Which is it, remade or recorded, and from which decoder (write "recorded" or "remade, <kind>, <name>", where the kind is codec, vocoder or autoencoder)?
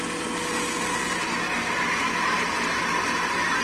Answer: recorded